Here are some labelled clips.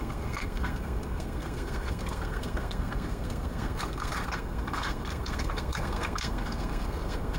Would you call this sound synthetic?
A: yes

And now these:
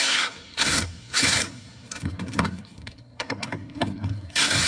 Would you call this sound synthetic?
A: yes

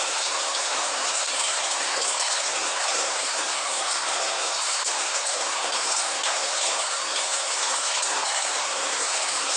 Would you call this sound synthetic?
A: yes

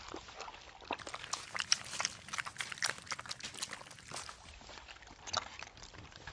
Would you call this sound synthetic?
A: no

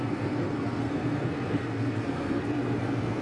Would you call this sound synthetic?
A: yes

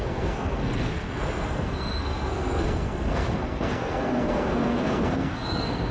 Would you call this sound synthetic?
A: yes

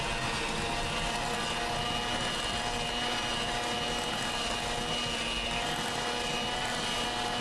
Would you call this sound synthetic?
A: no